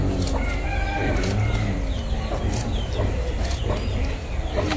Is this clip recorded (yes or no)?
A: yes